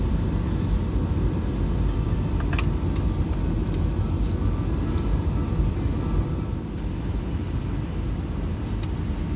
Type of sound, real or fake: real